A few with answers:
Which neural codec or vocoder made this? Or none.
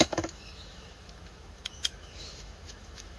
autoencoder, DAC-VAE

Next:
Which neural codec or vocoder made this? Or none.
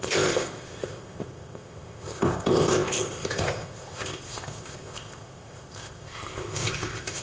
codec, ZipCodec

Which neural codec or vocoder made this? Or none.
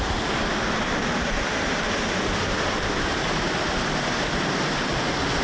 none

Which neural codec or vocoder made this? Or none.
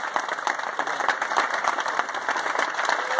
none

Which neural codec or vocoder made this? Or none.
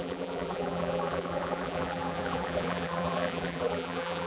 vocoder, BigVGAN v2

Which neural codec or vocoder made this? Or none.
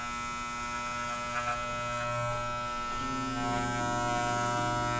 none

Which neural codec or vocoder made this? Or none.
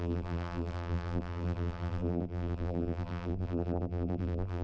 vocoder, BigVGAN v2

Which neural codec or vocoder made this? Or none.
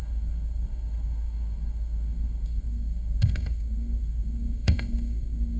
codec, SNAC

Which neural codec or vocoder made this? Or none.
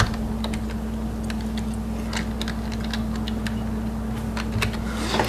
none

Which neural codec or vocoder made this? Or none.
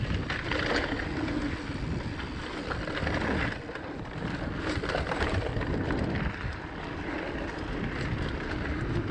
none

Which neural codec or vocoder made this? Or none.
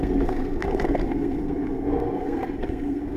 codec, SNAC